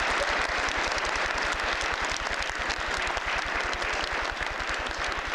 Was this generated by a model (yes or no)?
no